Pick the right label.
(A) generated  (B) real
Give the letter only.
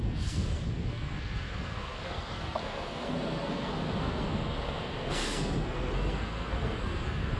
A